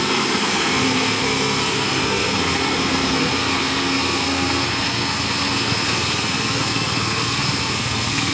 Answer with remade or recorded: remade